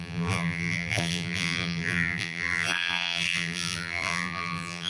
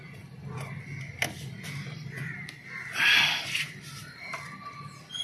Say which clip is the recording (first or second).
second